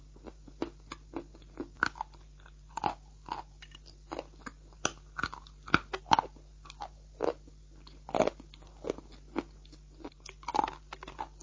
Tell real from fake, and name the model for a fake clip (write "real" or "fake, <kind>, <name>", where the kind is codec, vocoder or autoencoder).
real